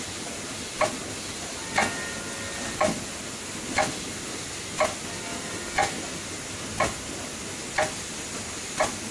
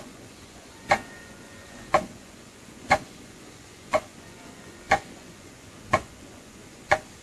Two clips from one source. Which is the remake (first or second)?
second